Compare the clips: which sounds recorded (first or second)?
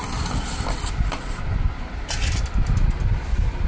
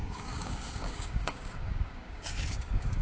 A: first